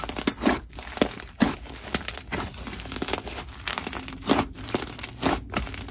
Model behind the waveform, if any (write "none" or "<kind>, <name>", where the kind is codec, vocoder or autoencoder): none